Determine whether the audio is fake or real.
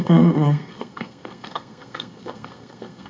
fake